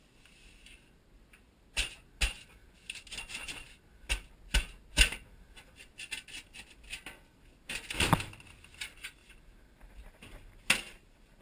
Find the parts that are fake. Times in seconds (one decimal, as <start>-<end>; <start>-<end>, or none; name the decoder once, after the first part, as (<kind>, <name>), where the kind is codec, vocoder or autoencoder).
none